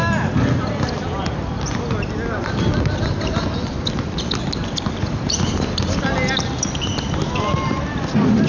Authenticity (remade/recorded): recorded